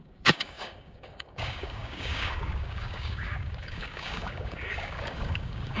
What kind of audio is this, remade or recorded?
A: remade